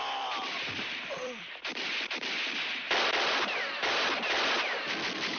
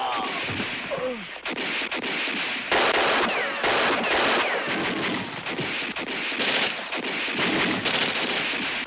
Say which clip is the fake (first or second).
first